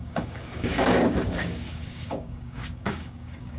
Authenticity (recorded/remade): remade